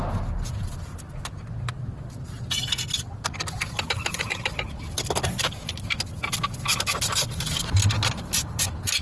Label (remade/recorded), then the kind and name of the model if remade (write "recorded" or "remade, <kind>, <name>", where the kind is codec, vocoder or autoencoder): recorded